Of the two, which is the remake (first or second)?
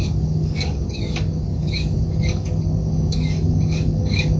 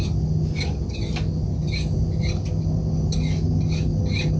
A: first